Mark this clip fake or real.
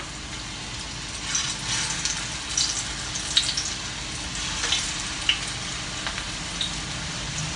real